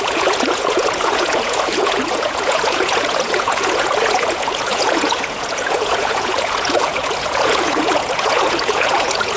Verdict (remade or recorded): remade